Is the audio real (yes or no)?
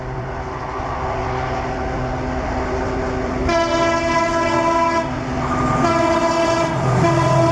yes